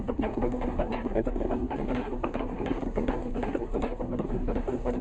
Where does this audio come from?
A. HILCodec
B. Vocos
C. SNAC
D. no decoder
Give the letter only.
C